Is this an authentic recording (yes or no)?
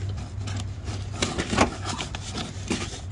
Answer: yes